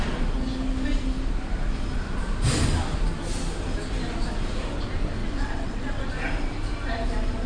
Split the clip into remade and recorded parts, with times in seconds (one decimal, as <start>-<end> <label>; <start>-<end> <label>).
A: 0.0-5.2 recorded; 5.2-6.1 remade; 6.1-7.5 recorded